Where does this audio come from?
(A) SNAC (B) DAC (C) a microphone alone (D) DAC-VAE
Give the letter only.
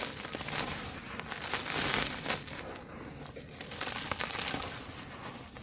C